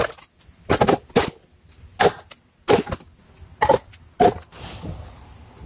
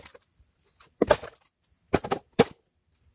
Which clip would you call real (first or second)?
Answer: first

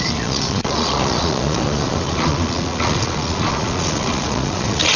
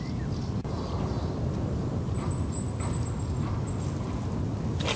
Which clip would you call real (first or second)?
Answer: second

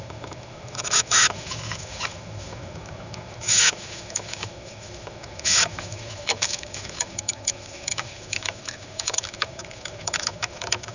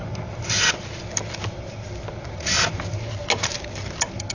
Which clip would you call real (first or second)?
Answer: second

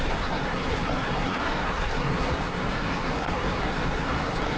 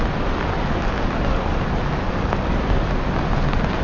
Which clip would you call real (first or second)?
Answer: second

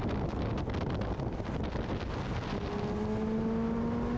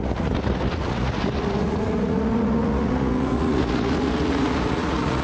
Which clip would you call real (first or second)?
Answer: first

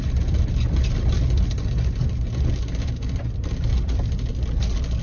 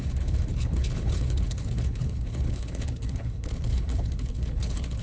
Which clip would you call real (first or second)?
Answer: first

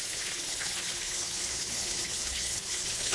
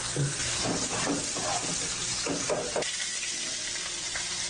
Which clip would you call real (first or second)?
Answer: second